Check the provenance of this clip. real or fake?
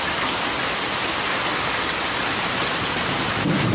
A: real